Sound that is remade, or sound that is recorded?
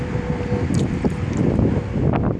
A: recorded